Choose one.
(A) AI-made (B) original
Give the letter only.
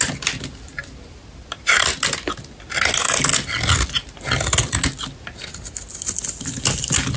B